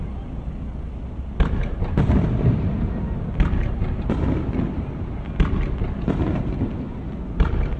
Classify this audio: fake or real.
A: real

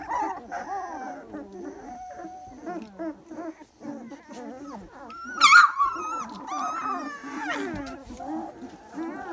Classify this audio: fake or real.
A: real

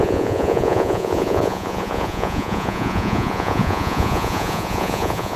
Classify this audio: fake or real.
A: fake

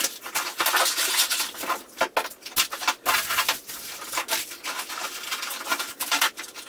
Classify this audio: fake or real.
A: real